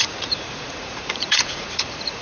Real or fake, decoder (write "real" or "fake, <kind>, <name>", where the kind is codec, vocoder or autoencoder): fake, vocoder, Vocos